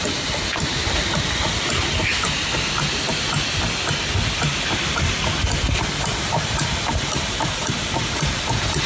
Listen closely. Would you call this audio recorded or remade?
recorded